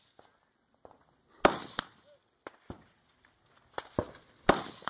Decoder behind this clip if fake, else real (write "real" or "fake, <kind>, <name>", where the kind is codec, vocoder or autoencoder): real